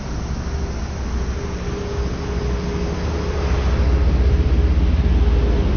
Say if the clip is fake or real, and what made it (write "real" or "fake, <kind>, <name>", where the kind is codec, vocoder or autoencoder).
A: real